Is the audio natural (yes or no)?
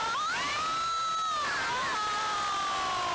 yes